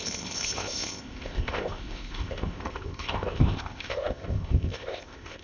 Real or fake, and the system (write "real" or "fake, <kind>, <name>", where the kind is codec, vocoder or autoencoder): fake, codec, ZipCodec